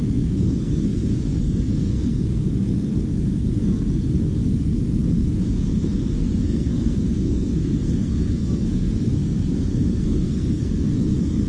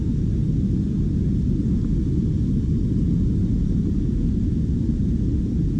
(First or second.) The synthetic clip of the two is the first